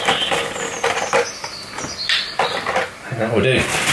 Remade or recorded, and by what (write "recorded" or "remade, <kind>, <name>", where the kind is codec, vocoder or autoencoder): recorded